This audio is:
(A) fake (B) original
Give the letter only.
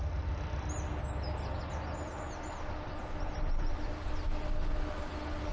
B